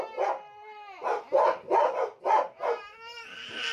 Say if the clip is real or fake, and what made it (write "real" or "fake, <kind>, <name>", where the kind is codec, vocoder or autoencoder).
real